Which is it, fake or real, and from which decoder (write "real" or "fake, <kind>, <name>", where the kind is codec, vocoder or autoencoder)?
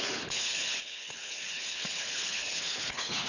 fake, codec, HILCodec